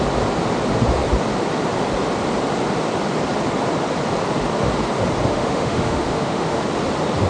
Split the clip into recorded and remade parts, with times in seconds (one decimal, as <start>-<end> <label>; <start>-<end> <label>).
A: 0.0-5.3 recorded; 5.3-6.6 remade; 6.6-7.3 recorded